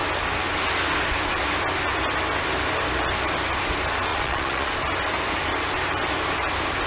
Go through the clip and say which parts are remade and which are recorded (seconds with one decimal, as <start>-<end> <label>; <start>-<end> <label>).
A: 0.0-4.1 recorded; 4.1-4.7 remade; 4.7-6.9 recorded